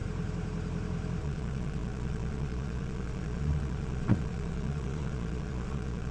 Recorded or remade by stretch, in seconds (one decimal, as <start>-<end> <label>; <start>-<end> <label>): 0.0-1.2 recorded; 1.2-6.1 remade